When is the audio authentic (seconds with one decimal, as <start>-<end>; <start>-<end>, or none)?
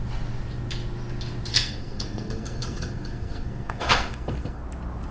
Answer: 0.0-1.5; 4.6-5.1